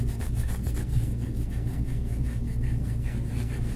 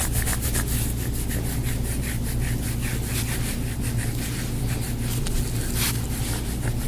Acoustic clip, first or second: second